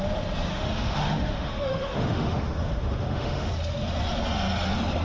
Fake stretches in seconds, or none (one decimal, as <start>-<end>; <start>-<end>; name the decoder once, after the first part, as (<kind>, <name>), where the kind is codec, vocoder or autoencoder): 0.5-3.5 (autoencoder, DAC-VAE)